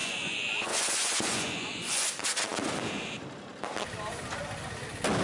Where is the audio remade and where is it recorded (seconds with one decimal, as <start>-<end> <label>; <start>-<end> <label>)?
0.0-2.1 remade; 2.1-5.2 recorded